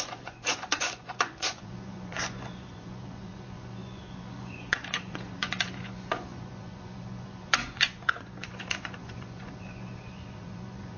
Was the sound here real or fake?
fake